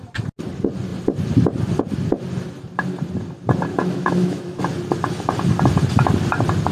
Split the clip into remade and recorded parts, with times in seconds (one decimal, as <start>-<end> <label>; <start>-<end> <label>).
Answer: 0.0-3.7 recorded; 3.7-4.6 remade; 4.6-6.7 recorded